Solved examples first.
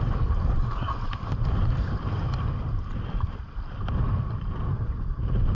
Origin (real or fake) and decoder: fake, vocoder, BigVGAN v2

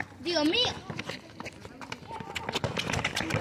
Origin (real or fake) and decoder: real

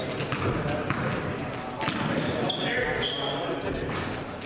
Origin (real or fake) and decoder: real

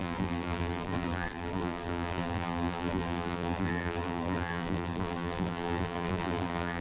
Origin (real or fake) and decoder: fake, vocoder, BigVGAN v2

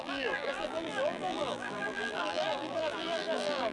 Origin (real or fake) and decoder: fake, vocoder, BigVGAN v2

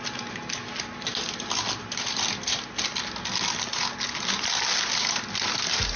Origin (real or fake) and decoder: real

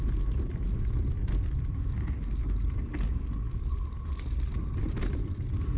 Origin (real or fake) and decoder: real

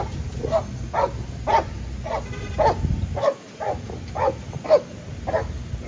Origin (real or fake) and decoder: real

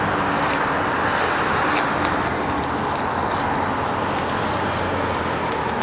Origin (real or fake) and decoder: real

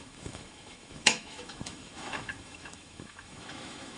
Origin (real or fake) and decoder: fake, autoencoder, DAC-VAE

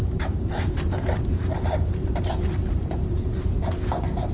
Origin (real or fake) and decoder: fake, vocoder, BigVGAN v2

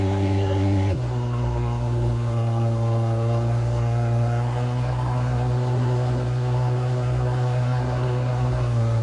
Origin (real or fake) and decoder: fake, codec, SNAC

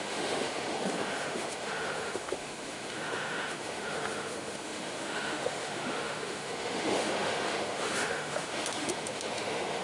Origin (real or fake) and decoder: fake, autoencoder, DAC-VAE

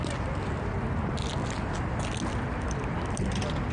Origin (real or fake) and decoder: real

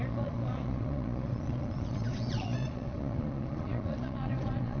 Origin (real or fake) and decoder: fake, vocoder, Vocos